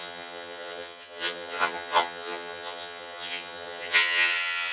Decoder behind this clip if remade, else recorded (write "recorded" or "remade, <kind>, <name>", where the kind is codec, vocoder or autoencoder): remade, vocoder, HiFi-GAN